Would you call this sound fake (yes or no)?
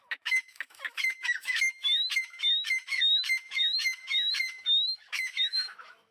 yes